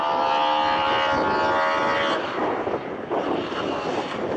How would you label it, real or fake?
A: real